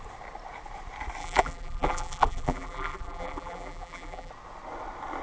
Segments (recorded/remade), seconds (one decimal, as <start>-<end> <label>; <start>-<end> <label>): 0.0-1.2 recorded; 1.2-4.3 remade; 4.3-5.2 recorded